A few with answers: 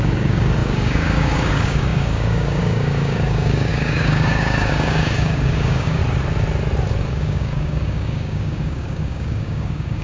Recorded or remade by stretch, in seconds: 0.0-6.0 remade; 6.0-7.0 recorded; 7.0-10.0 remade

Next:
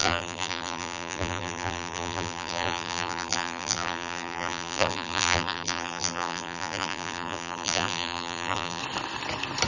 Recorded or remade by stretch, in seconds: 0.0-8.8 remade; 8.8-9.7 recorded

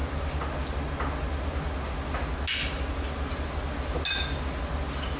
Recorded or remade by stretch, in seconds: 0.0-5.2 recorded

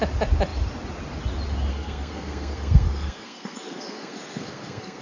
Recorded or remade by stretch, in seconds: 0.0-1.7 recorded; 1.7-5.0 remade

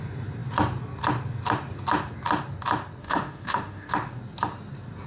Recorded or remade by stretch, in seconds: 0.0-3.0 recorded; 3.0-3.9 remade; 3.9-5.1 recorded

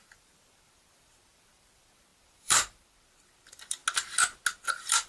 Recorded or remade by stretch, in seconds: 0.0-3.8 remade; 3.8-4.6 recorded; 4.6-5.1 remade